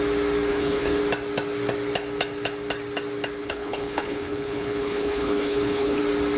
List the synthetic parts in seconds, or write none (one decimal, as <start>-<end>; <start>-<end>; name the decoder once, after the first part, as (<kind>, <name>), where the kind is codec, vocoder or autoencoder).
0.5-1.0 (codec, HILCodec); 3.4-6.0